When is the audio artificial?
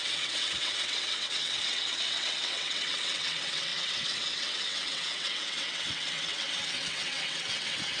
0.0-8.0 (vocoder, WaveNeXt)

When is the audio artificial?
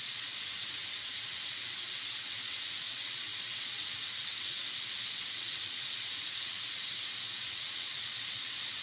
0.0-8.8 (vocoder, WaveNeXt)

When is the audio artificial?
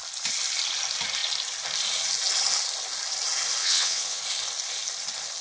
3.6-4.2 (vocoder, WaveNeXt)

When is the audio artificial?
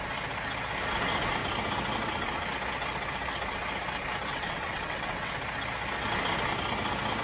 4.3-5.3 (vocoder, WaveNeXt)